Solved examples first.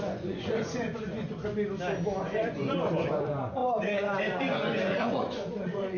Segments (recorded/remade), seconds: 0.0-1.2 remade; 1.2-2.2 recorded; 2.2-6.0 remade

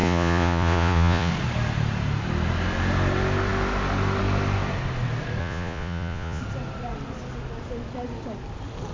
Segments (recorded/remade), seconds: 0.0-1.3 remade; 1.3-5.4 recorded; 5.4-6.4 remade; 6.4-8.9 recorded

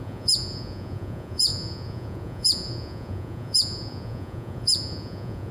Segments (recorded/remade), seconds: 0.0-5.5 remade

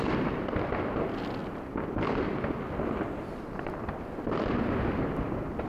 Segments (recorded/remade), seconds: 0.0-5.7 recorded

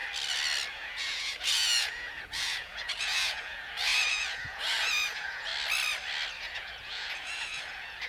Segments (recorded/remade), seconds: 0.0-0.7 recorded; 0.7-5.5 remade; 5.5-6.4 recorded; 6.4-8.1 remade